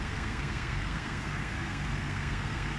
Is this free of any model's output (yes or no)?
no